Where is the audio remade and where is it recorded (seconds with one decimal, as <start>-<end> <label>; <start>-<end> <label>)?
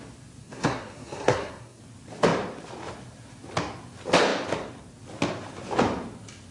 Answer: 0.0-0.4 recorded; 0.4-1.8 remade; 1.8-6.5 recorded